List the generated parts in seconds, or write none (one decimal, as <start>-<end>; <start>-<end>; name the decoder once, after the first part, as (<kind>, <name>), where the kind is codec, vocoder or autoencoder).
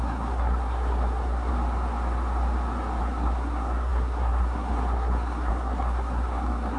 0.0-1.5 (codec, SNAC); 3.0-6.8